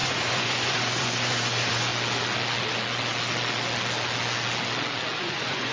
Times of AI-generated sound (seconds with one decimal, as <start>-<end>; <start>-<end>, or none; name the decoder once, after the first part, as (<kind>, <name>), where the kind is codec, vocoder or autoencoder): 0.0-1.9 (vocoder, Vocos); 5.2-5.7